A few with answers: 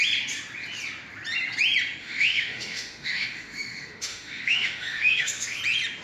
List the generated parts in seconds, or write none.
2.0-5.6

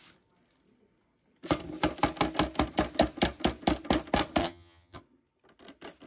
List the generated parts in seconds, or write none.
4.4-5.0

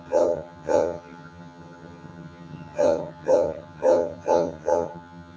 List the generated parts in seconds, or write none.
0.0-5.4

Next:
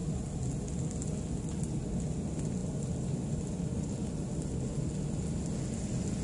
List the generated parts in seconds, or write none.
none